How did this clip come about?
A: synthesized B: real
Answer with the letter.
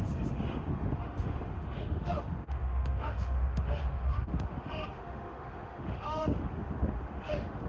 A